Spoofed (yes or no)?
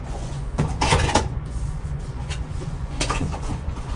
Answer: yes